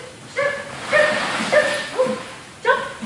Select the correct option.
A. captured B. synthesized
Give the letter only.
A